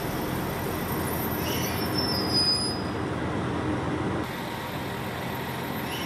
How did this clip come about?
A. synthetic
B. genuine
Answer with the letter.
B